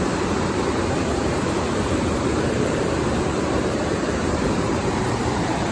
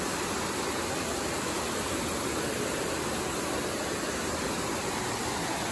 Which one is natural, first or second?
second